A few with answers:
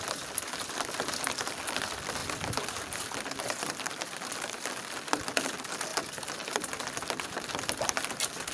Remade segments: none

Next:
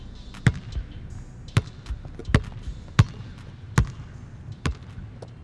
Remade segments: none

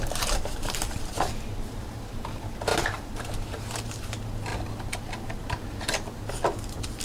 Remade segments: 0.0-7.0 (vocoder, BigVGAN v2)

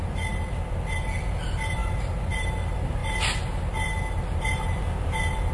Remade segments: none

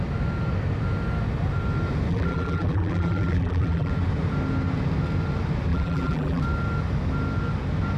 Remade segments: 2.1-3.9 (vocoder, BigVGAN v2); 5.7-6.4